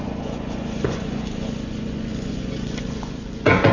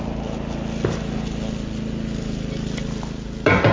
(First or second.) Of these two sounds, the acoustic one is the second